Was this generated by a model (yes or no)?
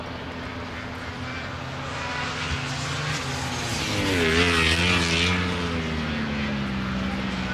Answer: no